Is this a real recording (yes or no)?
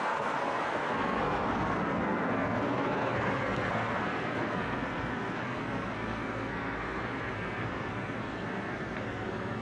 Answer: no